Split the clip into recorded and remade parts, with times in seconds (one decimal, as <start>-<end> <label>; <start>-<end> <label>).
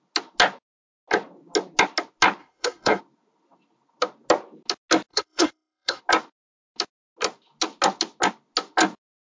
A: 0.0-2.4 recorded; 2.4-3.0 remade; 3.0-5.1 recorded; 5.1-6.0 remade; 6.0-9.3 recorded